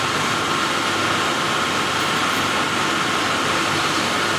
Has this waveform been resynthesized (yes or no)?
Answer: no